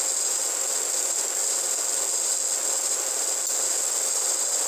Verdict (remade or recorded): recorded